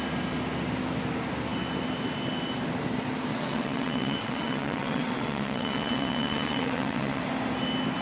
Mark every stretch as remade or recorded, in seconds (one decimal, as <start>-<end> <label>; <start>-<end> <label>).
0.0-3.3 recorded; 3.3-7.2 remade; 7.2-8.0 recorded